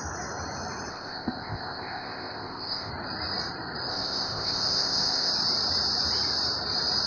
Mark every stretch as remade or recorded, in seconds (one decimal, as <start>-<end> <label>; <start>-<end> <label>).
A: 0.0-0.9 recorded; 0.9-2.9 remade; 2.9-3.9 recorded; 3.9-5.3 remade; 5.3-7.1 recorded